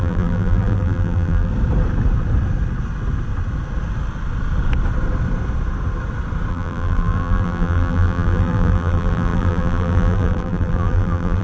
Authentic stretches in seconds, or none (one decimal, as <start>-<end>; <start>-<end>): 1.5-6.5